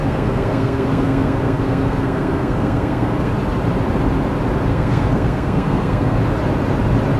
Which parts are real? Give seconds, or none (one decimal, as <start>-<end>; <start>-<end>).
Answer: 3.3-4.7; 6.2-7.2